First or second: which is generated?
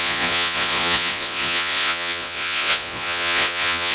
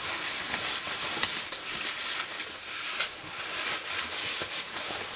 first